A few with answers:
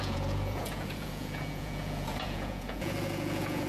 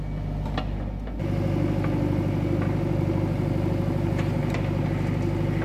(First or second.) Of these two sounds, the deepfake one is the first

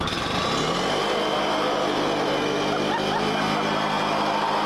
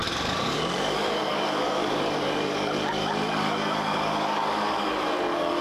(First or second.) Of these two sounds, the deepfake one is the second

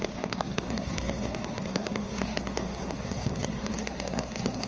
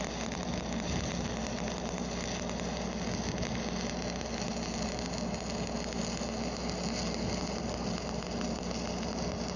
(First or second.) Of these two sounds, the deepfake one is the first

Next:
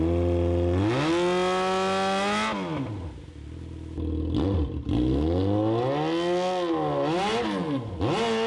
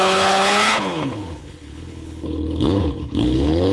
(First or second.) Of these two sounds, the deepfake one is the second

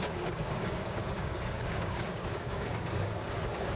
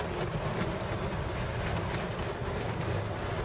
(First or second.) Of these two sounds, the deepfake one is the first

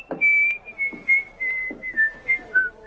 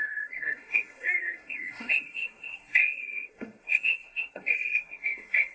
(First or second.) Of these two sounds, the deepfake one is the second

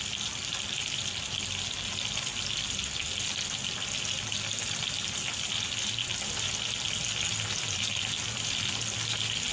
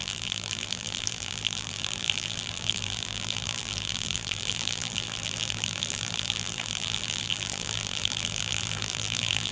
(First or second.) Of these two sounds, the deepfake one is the second